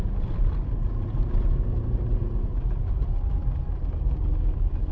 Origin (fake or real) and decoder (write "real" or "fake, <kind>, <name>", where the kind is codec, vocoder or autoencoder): real